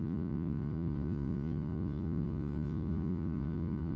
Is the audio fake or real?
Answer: fake